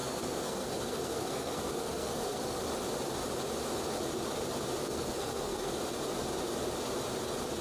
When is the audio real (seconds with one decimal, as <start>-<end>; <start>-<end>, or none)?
2.4-4.8; 5.7-7.6